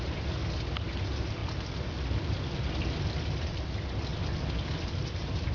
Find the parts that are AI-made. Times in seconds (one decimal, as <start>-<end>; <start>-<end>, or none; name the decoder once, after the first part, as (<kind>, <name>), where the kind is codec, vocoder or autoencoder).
0.0-1.4 (vocoder, BigVGAN v2); 3.2-4.1; 4.7-5.5